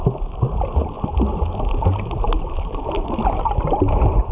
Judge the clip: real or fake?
real